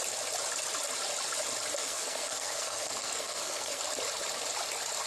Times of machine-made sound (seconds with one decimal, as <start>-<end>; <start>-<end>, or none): 1.8-3.8